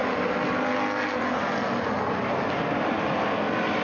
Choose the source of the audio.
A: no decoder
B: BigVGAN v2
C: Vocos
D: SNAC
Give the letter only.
A